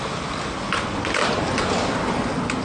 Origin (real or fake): fake